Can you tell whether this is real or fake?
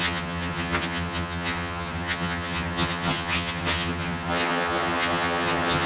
fake